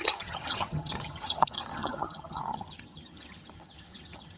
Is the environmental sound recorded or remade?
remade